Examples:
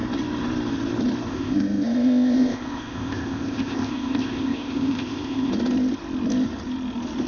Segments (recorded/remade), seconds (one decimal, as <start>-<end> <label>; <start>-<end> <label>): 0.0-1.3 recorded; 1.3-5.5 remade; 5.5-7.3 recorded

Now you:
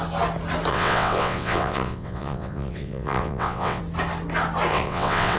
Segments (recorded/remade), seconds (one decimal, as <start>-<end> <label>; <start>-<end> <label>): 0.0-0.7 recorded; 0.7-3.8 remade; 3.8-4.7 recorded; 4.7-5.4 remade

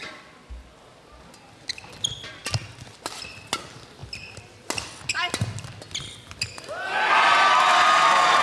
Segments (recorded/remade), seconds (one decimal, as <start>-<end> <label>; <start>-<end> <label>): 0.0-8.4 recorded

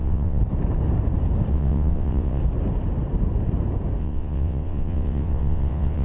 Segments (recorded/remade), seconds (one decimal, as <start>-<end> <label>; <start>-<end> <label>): 0.0-0.4 remade; 0.4-1.5 recorded; 1.5-2.4 remade; 2.4-4.0 recorded; 4.0-6.0 remade